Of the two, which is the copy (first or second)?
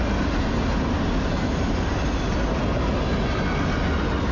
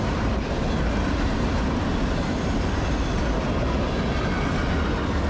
second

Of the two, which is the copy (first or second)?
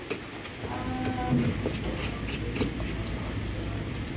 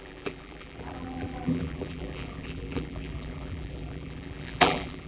second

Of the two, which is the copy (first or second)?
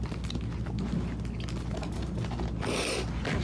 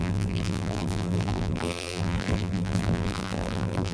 second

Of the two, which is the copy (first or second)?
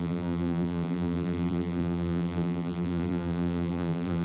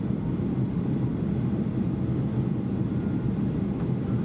first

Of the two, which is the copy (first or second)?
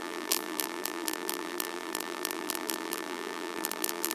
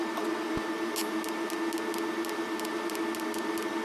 first